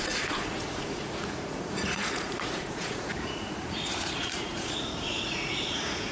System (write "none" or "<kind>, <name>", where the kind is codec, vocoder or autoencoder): vocoder, Vocos